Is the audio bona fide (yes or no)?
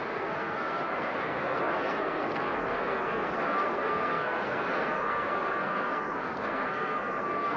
no